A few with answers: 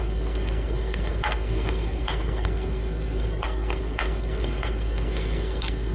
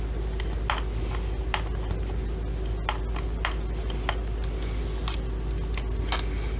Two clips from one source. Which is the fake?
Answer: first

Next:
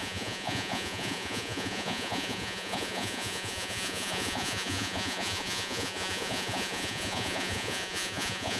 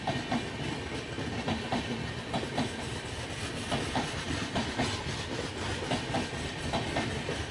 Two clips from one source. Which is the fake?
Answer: first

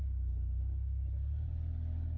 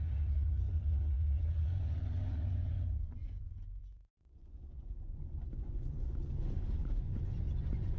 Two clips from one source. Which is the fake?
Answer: second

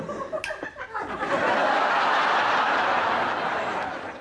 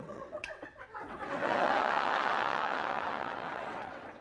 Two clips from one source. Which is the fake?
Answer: second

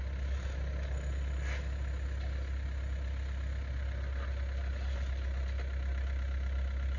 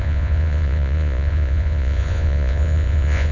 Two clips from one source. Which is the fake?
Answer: second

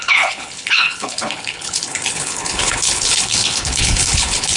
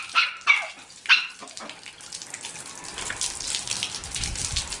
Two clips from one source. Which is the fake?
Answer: first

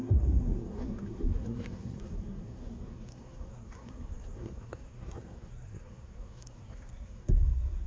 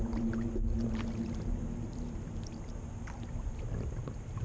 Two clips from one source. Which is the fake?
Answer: first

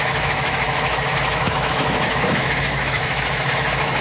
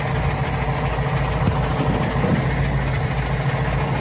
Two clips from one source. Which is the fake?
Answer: first